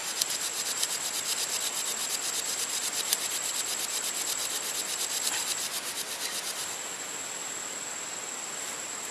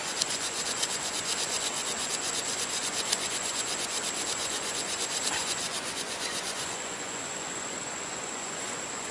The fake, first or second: second